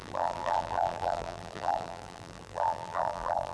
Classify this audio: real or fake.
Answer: fake